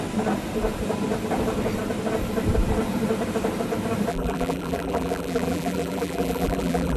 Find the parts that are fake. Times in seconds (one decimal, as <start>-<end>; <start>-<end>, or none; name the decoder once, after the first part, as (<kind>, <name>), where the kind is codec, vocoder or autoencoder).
4.1-7.0 (vocoder, BigVGAN v2)